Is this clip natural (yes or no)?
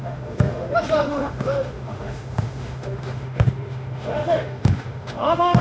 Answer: no